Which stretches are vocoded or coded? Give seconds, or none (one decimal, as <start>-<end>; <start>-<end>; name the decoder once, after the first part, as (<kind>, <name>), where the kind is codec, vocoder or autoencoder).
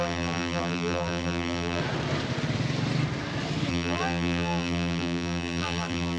0.0-1.8 (vocoder, BigVGAN v2); 3.7-6.2